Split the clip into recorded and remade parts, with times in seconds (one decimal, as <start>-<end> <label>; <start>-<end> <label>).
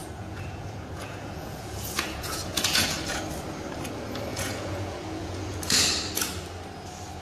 0.0-3.2 remade; 3.2-4.3 recorded; 4.3-5.6 remade; 5.6-7.2 recorded